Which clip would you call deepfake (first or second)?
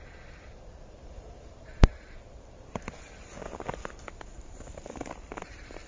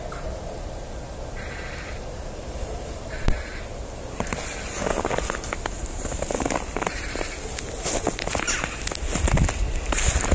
first